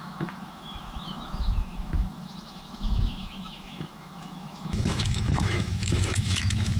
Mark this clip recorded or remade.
remade